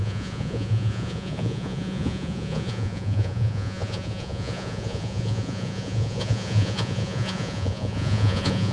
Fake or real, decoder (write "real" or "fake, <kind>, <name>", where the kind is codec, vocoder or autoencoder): fake, vocoder, Vocos